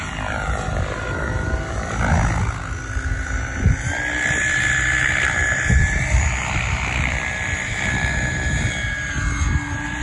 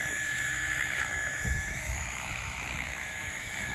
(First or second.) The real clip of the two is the first